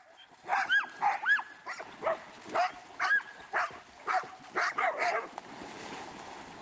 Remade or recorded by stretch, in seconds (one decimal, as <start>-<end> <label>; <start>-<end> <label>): 0.0-6.6 recorded